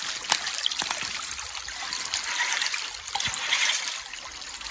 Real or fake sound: real